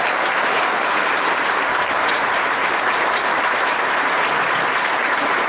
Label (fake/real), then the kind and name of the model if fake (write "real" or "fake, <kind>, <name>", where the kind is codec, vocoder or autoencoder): fake, vocoder, BigVGAN v2